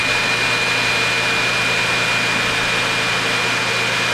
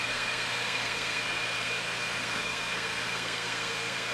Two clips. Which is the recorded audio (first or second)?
first